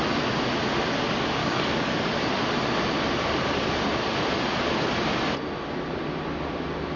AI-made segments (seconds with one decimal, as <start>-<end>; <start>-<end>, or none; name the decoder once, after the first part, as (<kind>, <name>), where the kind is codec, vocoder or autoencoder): 1.4-2.4 (codec, DAC)